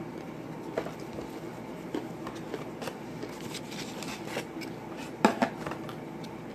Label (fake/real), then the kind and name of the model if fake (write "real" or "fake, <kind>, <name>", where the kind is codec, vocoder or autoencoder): real